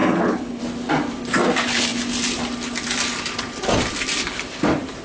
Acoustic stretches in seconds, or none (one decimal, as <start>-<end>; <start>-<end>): 0.6-5.0